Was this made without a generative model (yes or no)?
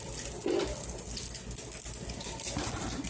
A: yes